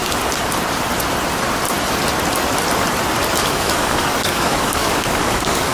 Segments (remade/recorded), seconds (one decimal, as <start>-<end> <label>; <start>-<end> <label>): 0.0-3.4 recorded; 3.4-5.7 remade